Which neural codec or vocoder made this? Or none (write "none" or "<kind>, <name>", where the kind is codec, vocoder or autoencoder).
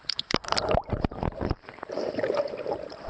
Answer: vocoder, BigVGAN v2